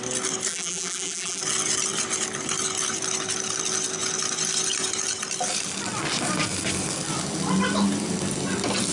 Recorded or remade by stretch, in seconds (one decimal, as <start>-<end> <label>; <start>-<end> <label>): 0.0-0.5 recorded; 0.5-1.4 remade; 1.4-8.9 recorded